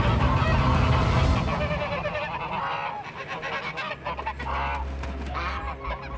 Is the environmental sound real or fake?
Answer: real